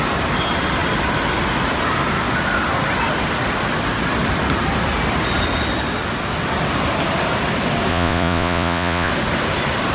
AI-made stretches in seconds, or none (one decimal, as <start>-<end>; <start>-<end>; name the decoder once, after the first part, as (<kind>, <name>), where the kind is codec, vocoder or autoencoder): 7.9-9.1 (vocoder, Vocos)